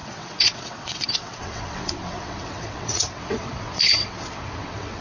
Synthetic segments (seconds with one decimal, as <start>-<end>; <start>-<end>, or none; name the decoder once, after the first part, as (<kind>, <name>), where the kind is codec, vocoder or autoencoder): 0.0-5.0 (vocoder, WaveNeXt)